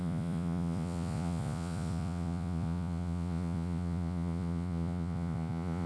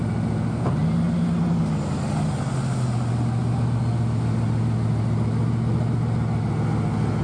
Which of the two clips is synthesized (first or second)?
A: first